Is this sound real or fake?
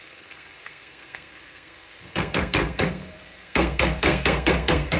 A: fake